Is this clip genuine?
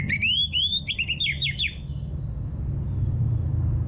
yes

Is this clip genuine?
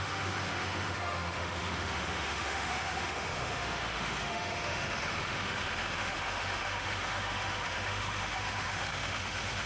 no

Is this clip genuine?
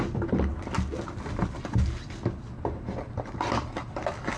yes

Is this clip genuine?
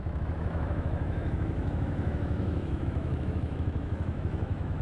no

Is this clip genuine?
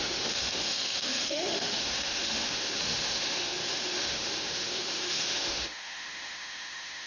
no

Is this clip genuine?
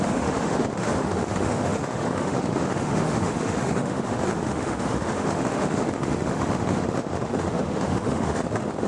no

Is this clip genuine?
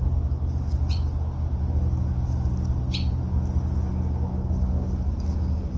yes